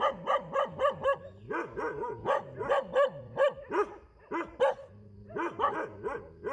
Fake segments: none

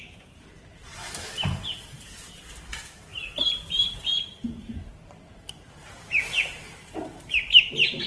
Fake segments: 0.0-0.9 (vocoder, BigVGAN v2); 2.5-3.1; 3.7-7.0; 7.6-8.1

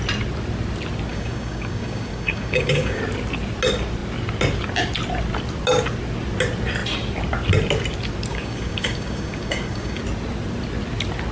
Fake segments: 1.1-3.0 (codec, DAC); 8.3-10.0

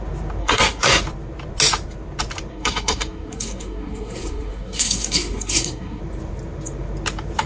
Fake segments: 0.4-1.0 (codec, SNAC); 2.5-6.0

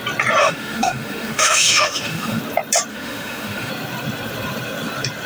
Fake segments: 0.4-2.4 (autoencoder, DAC-VAE); 2.9-3.7

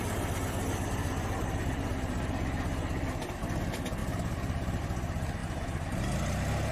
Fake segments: 4.0-4.8 (vocoder, BigVGAN v2); 5.4-6.0